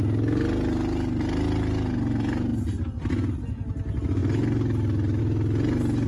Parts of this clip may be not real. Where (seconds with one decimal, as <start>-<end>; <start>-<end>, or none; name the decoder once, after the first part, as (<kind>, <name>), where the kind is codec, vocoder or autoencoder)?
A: none